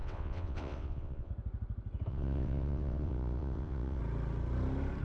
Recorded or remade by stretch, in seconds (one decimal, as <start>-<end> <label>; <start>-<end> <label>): 0.0-1.3 remade; 1.3-2.1 recorded; 2.1-4.0 remade; 4.0-5.0 recorded

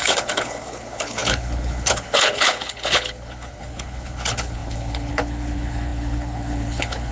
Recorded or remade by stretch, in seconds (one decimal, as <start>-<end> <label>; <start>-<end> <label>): 0.0-7.1 remade

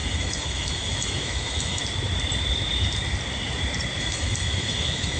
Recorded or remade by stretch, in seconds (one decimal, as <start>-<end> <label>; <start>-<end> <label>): 0.0-1.8 remade; 1.8-4.0 recorded; 4.0-5.2 remade

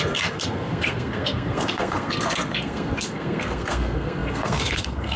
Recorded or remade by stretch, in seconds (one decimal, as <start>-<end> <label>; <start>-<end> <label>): 0.0-5.2 remade

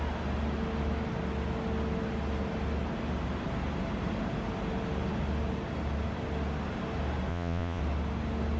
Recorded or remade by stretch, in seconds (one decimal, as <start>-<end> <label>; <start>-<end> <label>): 0.0-7.3 recorded; 7.3-7.8 remade; 7.8-8.6 recorded